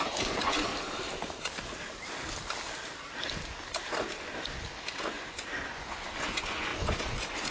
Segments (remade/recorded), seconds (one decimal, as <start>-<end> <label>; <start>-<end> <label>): 0.0-0.7 remade; 0.7-4.9 recorded; 4.9-7.5 remade